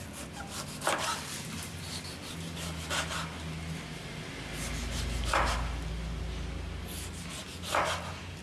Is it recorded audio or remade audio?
recorded